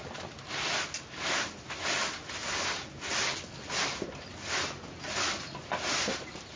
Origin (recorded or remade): recorded